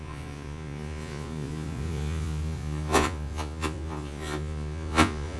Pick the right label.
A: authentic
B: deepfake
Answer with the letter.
B